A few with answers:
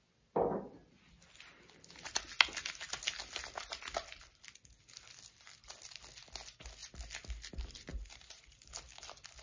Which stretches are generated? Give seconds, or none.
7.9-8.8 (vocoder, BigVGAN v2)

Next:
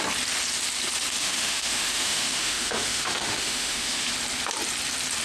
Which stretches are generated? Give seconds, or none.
1.2-4.1 (autoencoder, DAC-VAE)

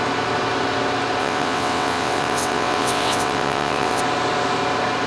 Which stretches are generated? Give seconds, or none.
1.2-4.0 (vocoder, WaveNeXt)

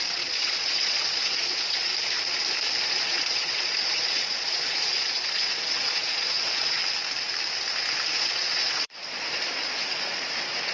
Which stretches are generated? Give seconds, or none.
0.0-1.9 (vocoder, Vocos); 3.0-6.8; 8.1-10.7

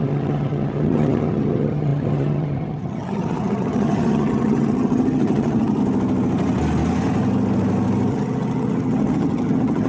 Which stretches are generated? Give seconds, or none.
0.0-5.8 (vocoder, HiFi-GAN); 8.1-9.9

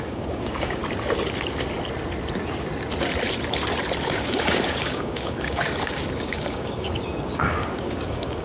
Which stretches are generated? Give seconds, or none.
0.0-0.8 (codec, DAC); 4.0-8.4